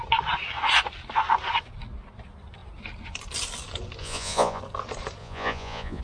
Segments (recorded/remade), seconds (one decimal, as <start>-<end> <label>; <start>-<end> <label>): 0.0-4.0 recorded; 4.0-4.6 remade; 4.6-5.2 recorded; 5.2-6.0 remade